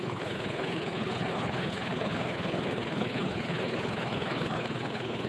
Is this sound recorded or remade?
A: remade